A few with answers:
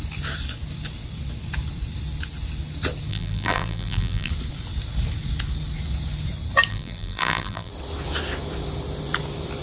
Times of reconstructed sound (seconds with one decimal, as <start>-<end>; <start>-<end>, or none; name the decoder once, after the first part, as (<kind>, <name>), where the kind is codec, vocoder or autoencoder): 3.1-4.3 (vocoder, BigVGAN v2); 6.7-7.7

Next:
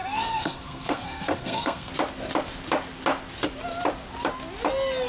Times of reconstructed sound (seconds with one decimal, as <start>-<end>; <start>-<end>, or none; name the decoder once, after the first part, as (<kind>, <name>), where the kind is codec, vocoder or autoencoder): 0.0-1.9 (codec, SNAC)

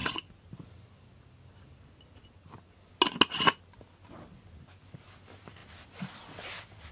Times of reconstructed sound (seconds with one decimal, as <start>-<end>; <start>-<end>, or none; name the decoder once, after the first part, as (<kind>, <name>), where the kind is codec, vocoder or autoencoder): 4.1-6.9 (vocoder, BigVGAN v2)